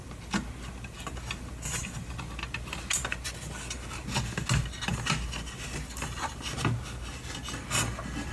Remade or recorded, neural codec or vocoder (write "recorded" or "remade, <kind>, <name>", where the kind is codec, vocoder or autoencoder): recorded